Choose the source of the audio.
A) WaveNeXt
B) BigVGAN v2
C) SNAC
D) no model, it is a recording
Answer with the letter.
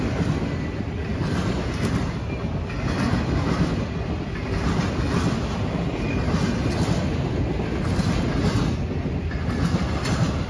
D